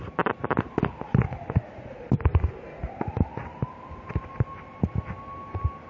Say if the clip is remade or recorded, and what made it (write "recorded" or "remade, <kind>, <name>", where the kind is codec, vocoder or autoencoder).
recorded